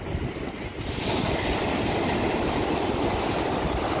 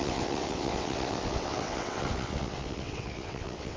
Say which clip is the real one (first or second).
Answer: first